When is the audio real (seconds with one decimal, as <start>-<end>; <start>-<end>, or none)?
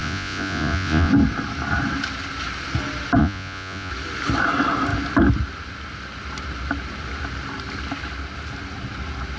1.1-3.2; 3.9-9.4